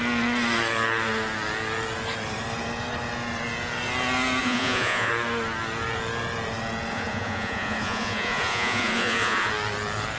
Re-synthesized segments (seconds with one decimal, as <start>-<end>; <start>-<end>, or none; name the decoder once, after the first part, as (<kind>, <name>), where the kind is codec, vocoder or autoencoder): 4.4-5.1 (vocoder, Vocos); 6.9-9.5